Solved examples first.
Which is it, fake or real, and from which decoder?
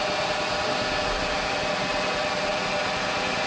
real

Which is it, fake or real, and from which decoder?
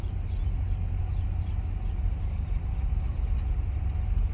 real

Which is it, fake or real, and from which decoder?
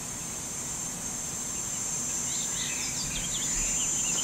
real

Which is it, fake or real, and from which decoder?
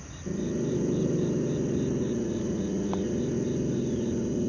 real